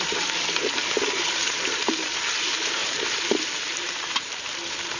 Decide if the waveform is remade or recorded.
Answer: remade